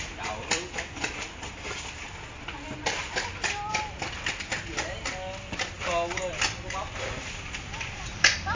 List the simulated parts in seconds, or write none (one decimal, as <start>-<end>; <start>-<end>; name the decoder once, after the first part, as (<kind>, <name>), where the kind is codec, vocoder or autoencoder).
none